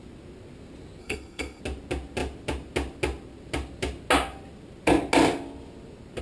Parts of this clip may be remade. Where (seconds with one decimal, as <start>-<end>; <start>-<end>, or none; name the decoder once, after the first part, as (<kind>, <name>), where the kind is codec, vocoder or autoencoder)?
1.0-1.6 (codec, SNAC)